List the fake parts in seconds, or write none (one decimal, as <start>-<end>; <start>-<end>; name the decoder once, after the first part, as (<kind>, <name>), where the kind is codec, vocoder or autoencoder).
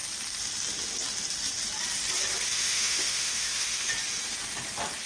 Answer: 2.5-3.9 (autoencoder, DAC-VAE)